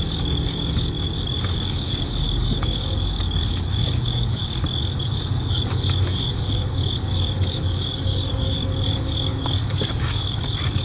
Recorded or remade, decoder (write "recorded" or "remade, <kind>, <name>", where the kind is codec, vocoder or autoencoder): remade, codec, DAC